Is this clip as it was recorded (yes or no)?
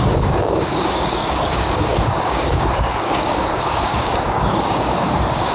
no